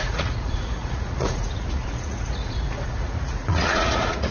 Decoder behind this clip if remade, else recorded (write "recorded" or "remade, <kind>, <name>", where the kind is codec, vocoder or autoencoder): remade, vocoder, Vocos